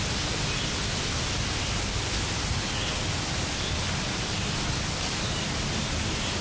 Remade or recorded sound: recorded